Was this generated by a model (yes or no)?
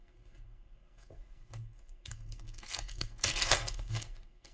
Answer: yes